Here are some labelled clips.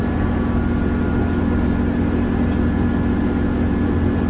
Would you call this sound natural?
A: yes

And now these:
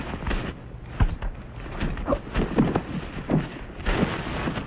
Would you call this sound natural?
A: yes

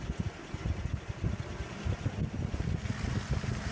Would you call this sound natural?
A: yes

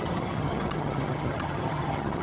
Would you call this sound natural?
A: no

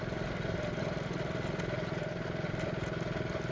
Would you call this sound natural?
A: yes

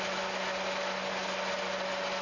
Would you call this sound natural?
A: yes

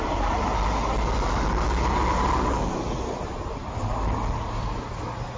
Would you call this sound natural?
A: yes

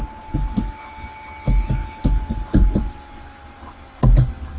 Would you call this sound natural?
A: yes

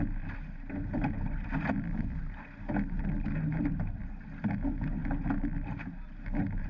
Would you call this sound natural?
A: yes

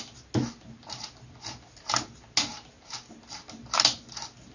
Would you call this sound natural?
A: yes